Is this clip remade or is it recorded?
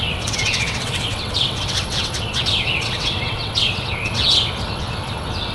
remade